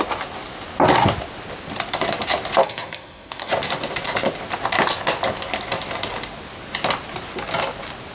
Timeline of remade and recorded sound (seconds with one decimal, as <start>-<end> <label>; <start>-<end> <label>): 0.0-2.6 recorded; 2.6-3.5 remade; 3.5-8.1 recorded